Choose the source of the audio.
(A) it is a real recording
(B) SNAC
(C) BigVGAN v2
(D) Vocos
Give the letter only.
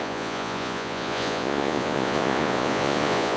D